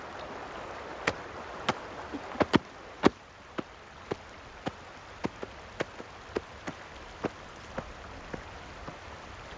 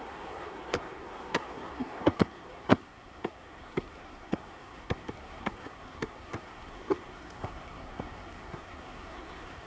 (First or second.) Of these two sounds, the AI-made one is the second